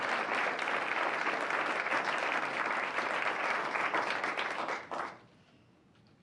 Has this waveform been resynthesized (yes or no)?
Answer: no